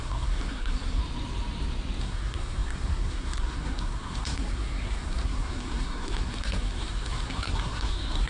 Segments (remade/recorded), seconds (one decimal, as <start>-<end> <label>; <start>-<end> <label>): 0.0-1.0 remade; 1.0-2.0 recorded; 2.0-8.3 remade